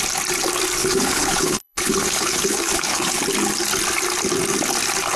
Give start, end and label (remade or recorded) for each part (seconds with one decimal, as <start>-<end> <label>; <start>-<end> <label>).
0.0-0.8 recorded; 0.8-3.2 remade; 3.2-5.2 recorded